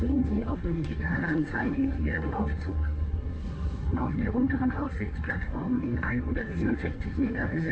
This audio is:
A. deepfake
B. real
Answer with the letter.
A